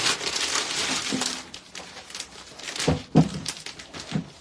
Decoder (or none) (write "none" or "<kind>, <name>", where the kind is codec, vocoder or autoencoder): none